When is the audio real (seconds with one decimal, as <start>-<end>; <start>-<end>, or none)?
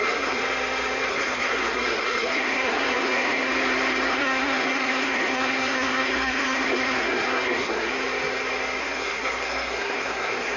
0.4-1.1; 3.5-4.1; 7.9-8.8